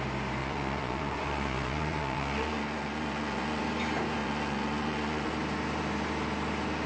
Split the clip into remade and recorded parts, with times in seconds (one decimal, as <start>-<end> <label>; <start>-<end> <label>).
0.0-0.4 recorded; 0.4-3.6 remade; 3.6-4.2 recorded; 4.2-5.3 remade; 5.3-6.9 recorded